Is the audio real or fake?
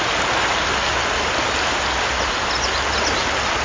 real